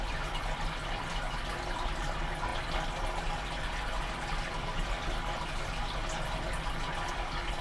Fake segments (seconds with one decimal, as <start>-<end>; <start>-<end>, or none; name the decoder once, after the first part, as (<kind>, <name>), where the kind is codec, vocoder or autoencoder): none